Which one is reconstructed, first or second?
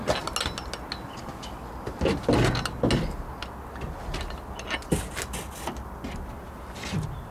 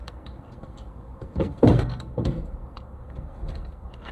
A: second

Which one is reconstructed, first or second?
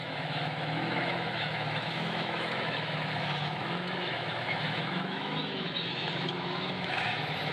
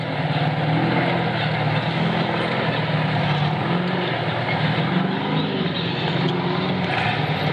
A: first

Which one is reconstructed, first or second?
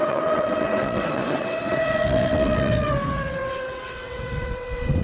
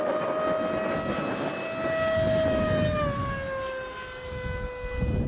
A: first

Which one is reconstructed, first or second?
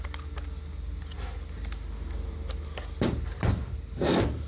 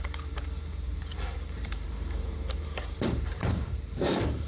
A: second